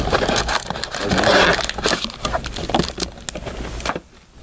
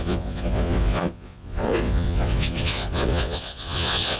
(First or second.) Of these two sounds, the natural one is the first